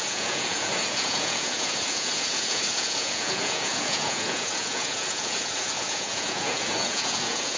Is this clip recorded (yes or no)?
no